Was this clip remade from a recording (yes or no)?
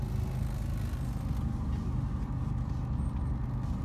no